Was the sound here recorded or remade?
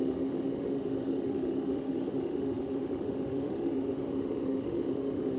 remade